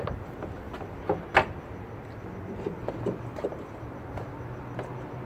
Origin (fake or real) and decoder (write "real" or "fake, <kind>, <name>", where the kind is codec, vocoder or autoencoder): real